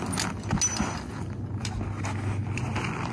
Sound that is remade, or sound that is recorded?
recorded